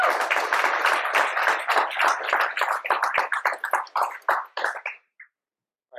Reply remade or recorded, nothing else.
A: recorded